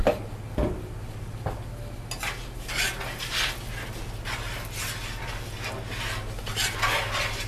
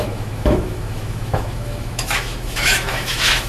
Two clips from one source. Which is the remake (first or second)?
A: second